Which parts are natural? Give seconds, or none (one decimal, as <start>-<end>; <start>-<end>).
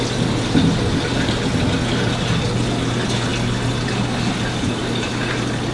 0.0-5.7